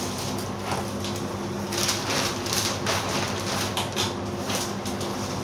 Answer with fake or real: real